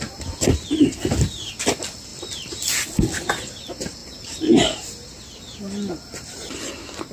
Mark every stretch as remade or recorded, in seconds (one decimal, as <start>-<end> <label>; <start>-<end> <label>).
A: 0.0-7.1 recorded